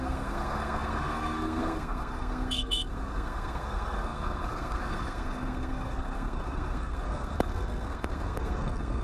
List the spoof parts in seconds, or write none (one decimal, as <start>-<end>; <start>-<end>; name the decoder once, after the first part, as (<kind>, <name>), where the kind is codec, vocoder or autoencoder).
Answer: 0.0-9.0 (codec, SNAC)